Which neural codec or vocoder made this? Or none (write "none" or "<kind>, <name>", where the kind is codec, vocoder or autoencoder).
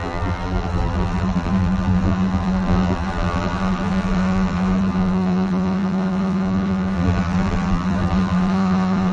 vocoder, BigVGAN v2